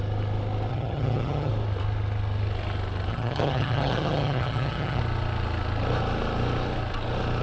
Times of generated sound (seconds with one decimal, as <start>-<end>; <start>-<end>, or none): 0.7-1.5; 3.1-5.0